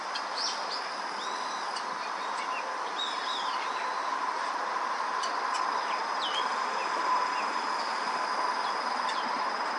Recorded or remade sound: recorded